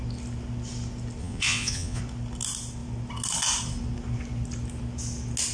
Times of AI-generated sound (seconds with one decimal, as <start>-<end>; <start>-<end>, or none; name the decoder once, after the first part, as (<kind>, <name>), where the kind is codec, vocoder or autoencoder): 1.2-2.0 (vocoder, Vocos)